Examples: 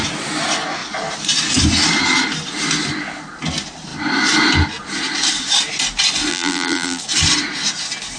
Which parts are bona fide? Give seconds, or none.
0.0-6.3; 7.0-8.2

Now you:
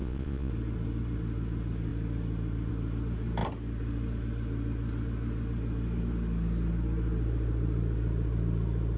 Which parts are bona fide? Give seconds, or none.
0.5-9.0

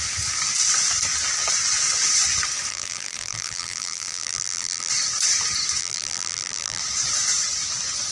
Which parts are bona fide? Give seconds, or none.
0.0-2.7; 4.9-5.8; 6.8-8.1